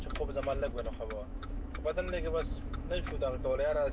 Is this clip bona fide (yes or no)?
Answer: no